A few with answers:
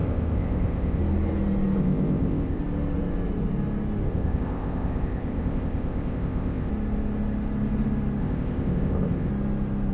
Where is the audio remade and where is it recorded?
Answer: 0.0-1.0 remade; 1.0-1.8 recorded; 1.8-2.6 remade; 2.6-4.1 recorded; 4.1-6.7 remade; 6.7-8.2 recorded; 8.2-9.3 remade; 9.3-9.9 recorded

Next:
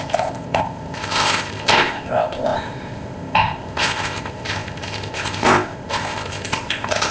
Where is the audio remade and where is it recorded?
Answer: 0.0-7.1 remade

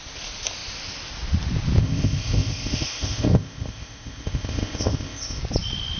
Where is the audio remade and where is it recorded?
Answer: 0.0-1.8 recorded; 1.8-5.4 remade; 5.4-6.0 recorded

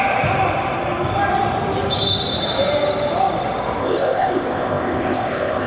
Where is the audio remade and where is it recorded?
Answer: 0.0-3.8 recorded; 3.8-5.7 remade

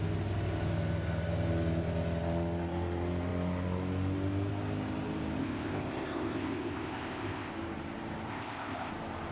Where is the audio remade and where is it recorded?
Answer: 0.0-5.4 recorded; 5.4-7.5 remade; 7.5-8.3 recorded; 8.3-8.9 remade; 8.9-9.3 recorded

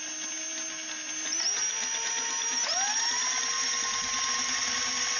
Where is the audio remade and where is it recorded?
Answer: 0.0-5.2 recorded